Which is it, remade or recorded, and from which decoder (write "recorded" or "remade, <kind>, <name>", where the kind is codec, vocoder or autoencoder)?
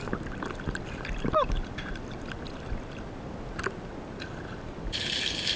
recorded